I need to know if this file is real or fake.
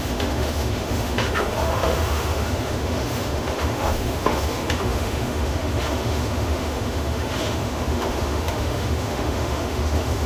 fake